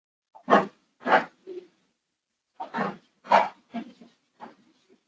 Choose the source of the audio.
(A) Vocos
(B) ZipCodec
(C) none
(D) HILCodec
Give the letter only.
C